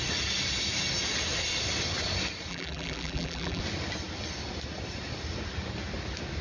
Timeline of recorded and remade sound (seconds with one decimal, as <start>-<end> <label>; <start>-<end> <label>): 0.0-2.5 recorded; 2.5-3.6 remade; 3.6-6.4 recorded